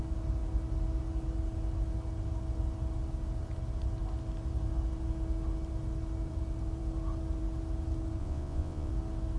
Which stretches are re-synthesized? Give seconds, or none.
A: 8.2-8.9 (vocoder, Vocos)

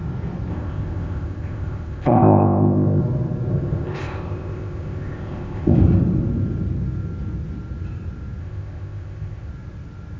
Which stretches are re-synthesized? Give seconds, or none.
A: 0.5-3.0 (codec, ZipCodec); 3.5-5.7; 8.4-9.5

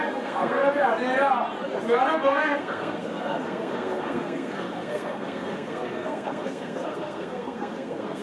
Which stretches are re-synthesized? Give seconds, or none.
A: 0.0-0.6 (codec, SNAC); 2.1-8.2

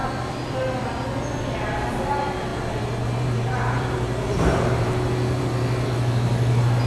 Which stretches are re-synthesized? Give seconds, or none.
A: 2.5-5.4 (vocoder, BigVGAN v2)

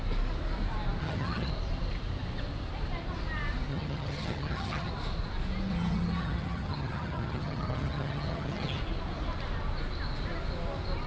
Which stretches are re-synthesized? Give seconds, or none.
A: 1.0-1.5 (vocoder, HiFi-GAN); 3.7-4.9; 5.7-8.8

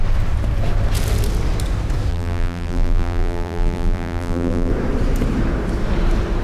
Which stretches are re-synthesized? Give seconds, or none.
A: 2.1-4.7 (vocoder, BigVGAN v2)

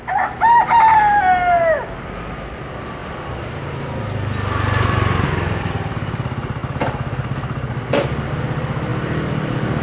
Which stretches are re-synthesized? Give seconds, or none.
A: none

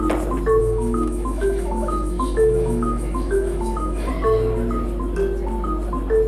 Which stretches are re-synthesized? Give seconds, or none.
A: 0.6-4.1 (autoencoder, DAC-VAE)